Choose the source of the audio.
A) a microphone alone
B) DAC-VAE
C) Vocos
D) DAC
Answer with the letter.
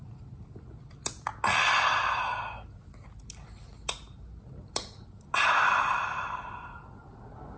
A